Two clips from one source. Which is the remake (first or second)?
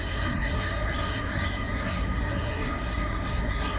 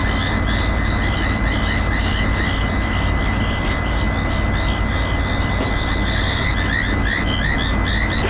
first